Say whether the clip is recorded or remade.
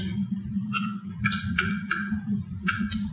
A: remade